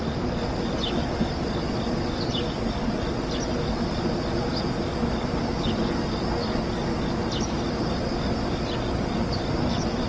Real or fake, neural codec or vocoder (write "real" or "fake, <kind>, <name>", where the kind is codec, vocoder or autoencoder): real